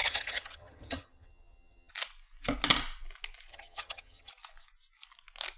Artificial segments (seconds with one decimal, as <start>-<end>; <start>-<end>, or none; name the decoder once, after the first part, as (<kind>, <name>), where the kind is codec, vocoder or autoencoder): 0.0-1.9 (vocoder, HiFi-GAN); 3.5-4.3